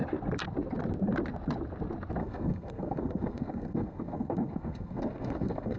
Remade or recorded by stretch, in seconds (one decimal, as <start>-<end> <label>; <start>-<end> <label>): 0.0-2.2 recorded; 2.2-5.8 remade